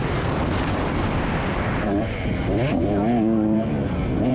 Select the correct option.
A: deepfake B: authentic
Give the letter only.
A